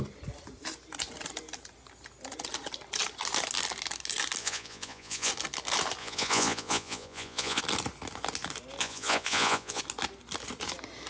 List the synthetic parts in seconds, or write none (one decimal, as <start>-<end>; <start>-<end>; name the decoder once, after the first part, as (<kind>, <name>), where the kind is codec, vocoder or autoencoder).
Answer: 4.4-5.3 (vocoder, Vocos); 6.0-7.6; 8.8-9.8